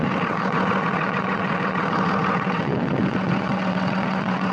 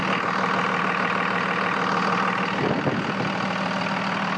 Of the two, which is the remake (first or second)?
first